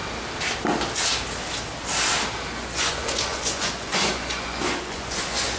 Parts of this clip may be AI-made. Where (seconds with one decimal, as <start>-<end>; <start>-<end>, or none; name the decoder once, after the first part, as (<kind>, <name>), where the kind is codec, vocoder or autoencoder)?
2.5-5.6 (vocoder, Vocos)